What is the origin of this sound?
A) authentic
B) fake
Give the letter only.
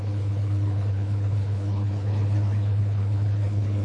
B